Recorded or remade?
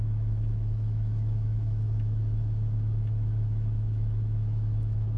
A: remade